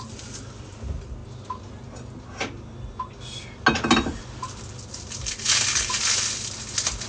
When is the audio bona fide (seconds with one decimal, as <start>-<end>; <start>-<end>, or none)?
0.0-7.1